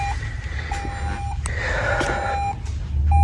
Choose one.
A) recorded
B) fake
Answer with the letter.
A